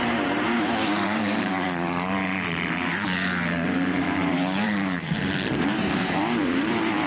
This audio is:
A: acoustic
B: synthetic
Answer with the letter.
B